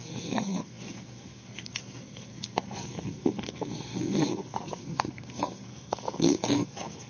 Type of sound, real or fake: fake